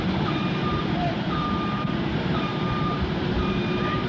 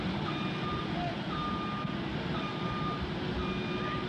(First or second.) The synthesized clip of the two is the first